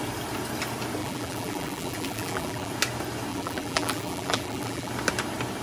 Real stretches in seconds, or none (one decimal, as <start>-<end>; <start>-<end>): 0.0-1.0; 2.7-3.3; 4.9-5.6